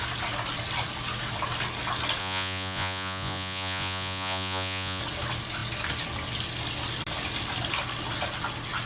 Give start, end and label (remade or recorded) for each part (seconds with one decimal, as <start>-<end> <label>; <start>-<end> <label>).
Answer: 0.0-2.2 recorded; 2.2-5.0 remade; 5.0-8.9 recorded